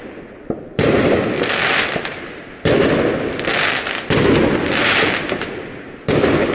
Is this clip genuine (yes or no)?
yes